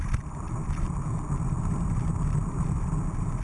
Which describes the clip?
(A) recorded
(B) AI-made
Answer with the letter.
A